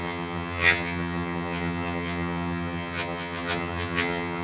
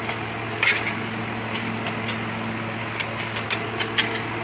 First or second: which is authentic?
second